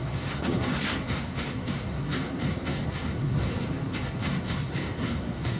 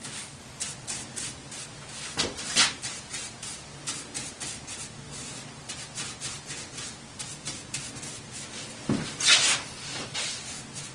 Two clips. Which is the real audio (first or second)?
second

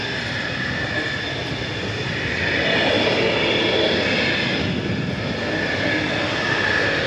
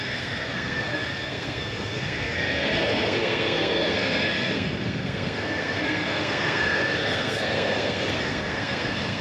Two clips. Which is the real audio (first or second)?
first